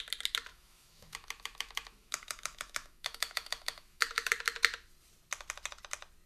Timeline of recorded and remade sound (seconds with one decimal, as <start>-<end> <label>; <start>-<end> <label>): 0.0-0.5 recorded; 0.5-4.3 remade; 4.3-6.3 recorded